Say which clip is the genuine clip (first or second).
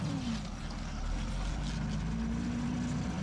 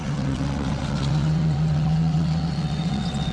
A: first